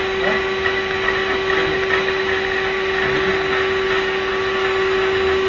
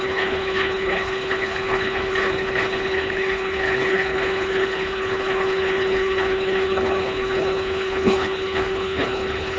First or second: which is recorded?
first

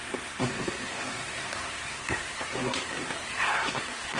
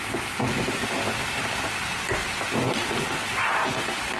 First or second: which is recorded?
second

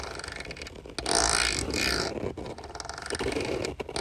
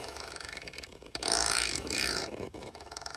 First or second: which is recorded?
first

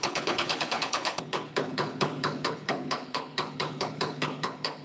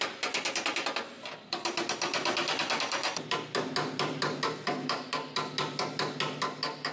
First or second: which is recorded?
second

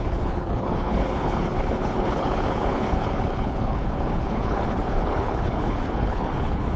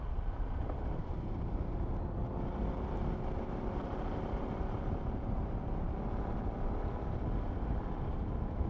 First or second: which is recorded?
second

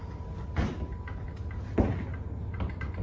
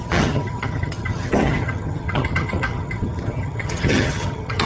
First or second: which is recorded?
first